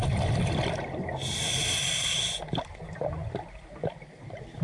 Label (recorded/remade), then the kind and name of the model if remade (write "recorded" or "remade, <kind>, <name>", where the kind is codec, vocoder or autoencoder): recorded